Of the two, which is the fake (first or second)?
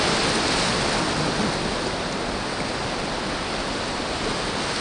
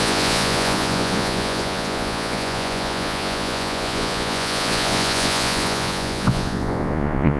second